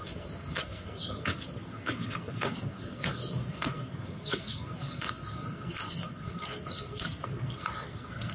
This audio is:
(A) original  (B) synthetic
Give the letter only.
B